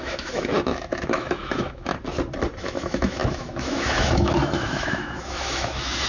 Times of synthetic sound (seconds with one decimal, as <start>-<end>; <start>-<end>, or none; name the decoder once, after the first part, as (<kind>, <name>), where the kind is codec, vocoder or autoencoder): 0.0-1.9 (autoencoder, DAC-VAE); 2.6-6.1